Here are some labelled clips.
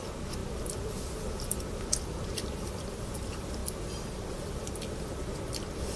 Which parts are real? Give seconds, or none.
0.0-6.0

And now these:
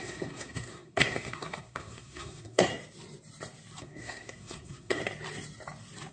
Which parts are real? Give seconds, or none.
2.7-3.8; 5.0-6.1